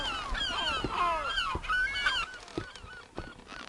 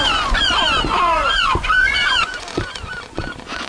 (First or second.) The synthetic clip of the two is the second